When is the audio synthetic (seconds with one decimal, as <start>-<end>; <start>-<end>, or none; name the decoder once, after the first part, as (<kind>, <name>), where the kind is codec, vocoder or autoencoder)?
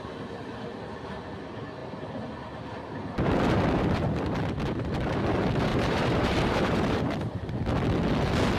5.7-7.0 (vocoder, BigVGAN v2)